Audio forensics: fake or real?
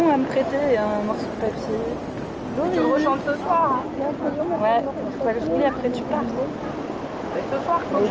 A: real